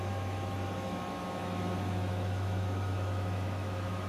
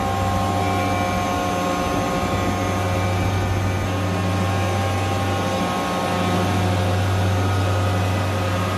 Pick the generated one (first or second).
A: first